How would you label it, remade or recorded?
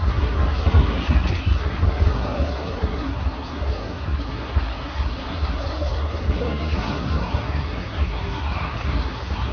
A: remade